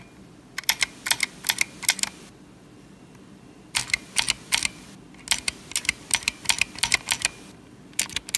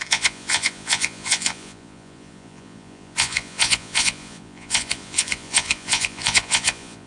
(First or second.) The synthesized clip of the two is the second